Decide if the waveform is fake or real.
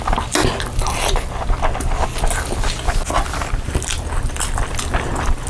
real